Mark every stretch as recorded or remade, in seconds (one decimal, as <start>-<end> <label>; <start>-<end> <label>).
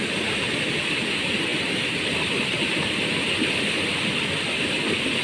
0.0-5.2 recorded